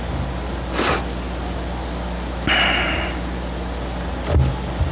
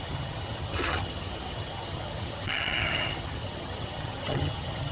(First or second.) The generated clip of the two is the second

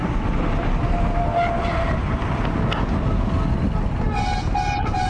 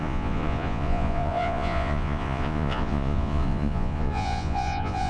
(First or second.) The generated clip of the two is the second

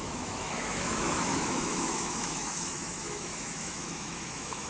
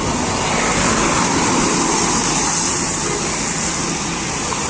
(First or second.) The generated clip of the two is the first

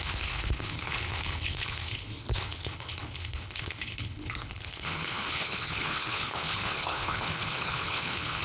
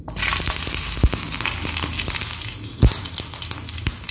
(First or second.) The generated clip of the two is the first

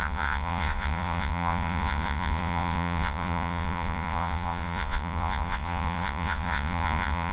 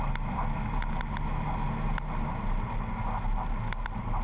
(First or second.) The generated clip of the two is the first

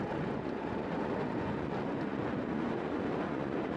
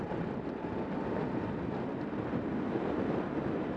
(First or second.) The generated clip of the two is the first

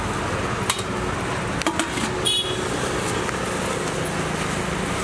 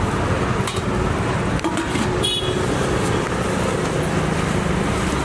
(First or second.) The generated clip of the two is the second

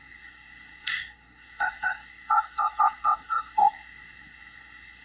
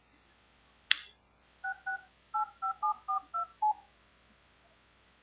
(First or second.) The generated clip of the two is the first